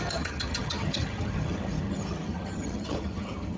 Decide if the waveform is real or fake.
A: fake